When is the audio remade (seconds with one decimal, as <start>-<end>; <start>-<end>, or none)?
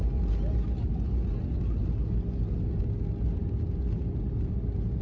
none